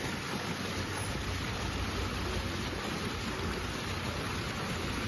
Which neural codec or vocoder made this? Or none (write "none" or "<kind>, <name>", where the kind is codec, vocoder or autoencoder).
none